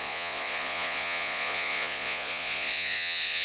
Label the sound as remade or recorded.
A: remade